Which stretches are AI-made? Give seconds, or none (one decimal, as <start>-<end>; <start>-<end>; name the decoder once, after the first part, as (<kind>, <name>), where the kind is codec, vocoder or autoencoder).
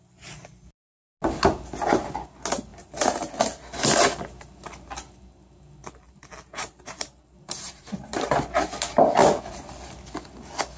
2.7-3.3 (vocoder, BigVGAN v2); 5.8-7.9